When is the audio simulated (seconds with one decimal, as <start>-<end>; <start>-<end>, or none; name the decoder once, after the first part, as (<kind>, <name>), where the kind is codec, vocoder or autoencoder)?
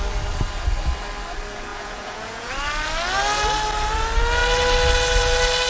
1.7-2.5 (vocoder, Vocos)